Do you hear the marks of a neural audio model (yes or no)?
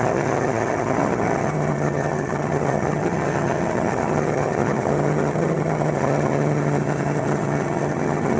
yes